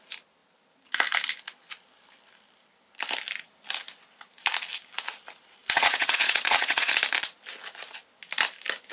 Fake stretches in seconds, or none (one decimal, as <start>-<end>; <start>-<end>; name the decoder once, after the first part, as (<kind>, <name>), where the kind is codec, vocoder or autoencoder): 5.6-6.9 (vocoder, WaveNeXt)